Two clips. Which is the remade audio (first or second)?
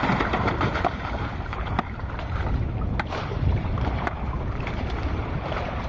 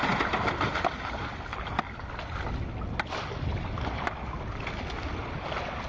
first